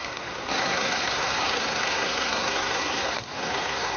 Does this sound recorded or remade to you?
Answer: remade